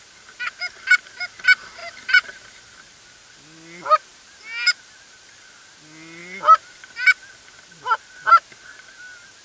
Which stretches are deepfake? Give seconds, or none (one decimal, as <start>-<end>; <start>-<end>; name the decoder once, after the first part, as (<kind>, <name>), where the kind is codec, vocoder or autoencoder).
1.8-2.6 (vocoder, BigVGAN v2)